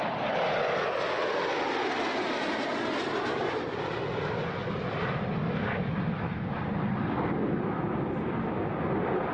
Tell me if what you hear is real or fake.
real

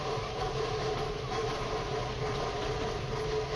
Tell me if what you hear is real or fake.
real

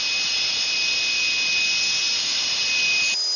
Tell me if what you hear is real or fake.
real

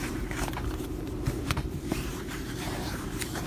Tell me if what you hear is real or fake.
fake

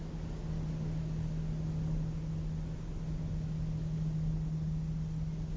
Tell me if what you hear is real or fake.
real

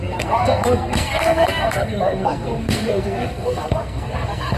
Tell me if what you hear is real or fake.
fake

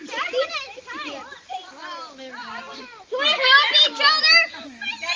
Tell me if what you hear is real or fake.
real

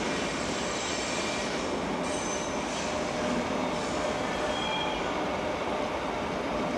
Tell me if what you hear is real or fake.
real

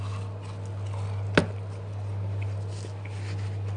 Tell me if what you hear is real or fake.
real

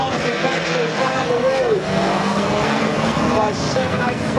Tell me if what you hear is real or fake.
fake